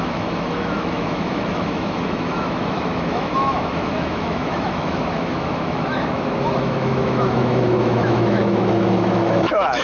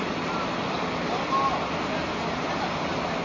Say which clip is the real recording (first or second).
second